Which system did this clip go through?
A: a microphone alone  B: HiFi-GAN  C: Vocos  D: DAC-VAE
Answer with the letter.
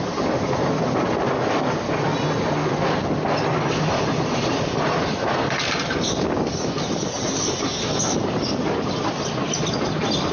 A